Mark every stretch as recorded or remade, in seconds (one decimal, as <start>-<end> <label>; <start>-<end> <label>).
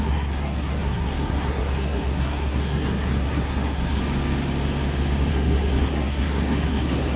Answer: 0.0-4.0 remade; 4.0-5.3 recorded; 5.3-7.2 remade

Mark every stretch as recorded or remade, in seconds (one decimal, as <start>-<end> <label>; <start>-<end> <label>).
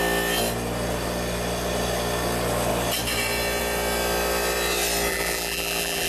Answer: 0.0-5.1 recorded; 5.1-6.1 remade